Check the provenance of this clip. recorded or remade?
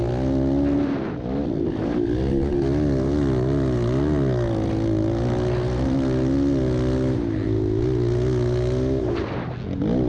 recorded